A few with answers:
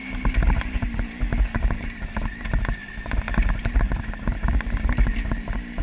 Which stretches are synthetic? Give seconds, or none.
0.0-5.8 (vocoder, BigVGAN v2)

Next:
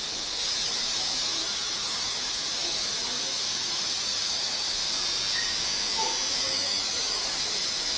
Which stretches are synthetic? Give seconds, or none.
0.0-4.8 (autoencoder, DAC-VAE); 6.4-8.0